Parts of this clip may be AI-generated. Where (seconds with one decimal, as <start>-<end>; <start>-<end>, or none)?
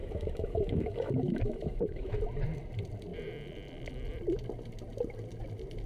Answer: 0.0-2.2